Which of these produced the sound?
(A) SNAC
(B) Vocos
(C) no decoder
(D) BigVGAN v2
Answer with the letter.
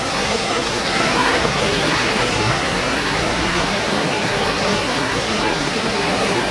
A